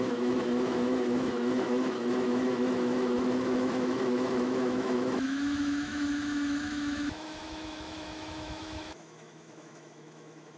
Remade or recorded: remade